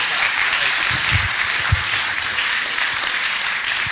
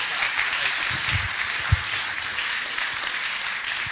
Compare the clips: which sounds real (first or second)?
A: second